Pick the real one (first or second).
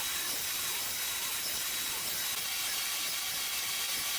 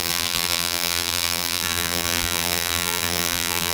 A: first